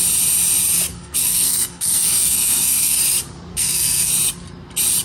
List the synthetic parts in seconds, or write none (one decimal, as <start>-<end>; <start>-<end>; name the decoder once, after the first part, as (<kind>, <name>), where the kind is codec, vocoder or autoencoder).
0.9-3.0 (codec, SNAC); 3.5-4.1